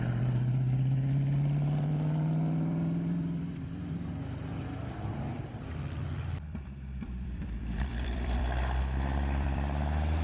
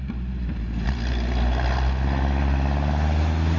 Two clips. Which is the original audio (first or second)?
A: second